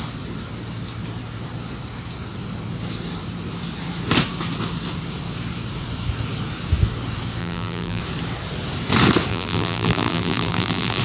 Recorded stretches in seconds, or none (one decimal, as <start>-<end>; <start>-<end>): 0.0-7.4; 8.0-9.3